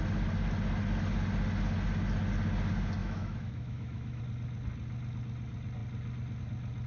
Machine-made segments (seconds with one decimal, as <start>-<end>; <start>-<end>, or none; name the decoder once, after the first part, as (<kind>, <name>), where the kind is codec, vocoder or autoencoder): 3.0-4.2 (autoencoder, DAC-VAE)